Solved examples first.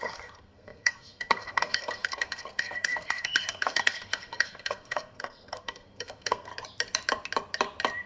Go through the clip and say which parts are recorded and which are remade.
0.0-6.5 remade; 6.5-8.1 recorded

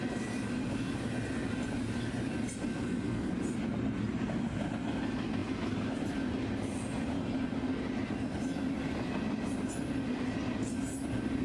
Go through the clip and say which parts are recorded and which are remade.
0.0-2.7 recorded; 2.7-3.3 remade; 3.3-11.4 recorded

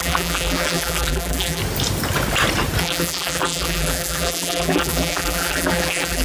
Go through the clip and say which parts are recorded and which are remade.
0.0-1.6 remade; 1.6-2.8 recorded; 2.8-6.2 remade

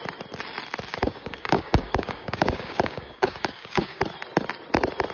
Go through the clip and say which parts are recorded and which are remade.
0.0-0.9 recorded; 0.9-4.0 remade; 4.0-5.1 recorded